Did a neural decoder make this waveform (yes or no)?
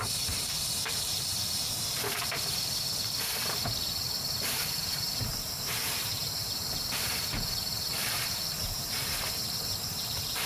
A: yes